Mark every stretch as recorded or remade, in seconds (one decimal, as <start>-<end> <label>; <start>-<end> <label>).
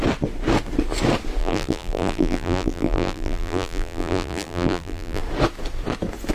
0.0-1.4 recorded; 1.4-5.2 remade; 5.2-6.3 recorded